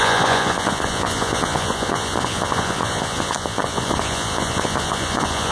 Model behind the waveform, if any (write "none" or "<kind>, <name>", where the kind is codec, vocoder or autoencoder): vocoder, Vocos